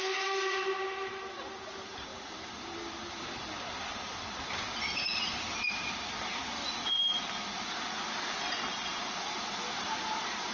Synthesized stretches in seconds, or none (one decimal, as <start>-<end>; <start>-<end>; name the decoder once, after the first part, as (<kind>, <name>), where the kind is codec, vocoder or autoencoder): 8.4-9.0 (vocoder, WaveNeXt)